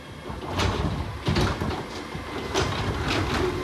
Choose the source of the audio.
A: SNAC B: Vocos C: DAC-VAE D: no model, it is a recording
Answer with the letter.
D